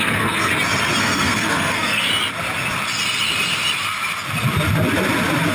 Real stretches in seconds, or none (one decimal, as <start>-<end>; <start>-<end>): 0.5-1.0; 2.1-5.5